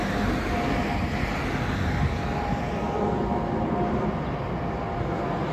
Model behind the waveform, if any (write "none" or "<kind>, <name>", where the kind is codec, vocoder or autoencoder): none